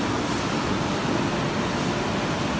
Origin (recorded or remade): recorded